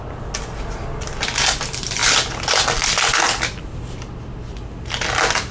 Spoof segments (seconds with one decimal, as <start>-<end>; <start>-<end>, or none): none